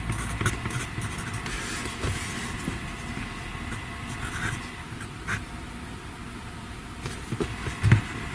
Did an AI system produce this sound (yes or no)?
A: no